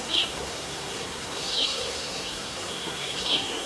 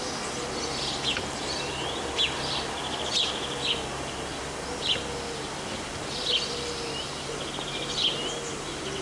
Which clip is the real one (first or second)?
second